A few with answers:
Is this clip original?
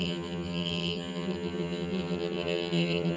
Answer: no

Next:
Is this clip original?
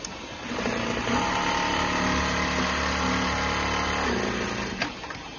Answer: yes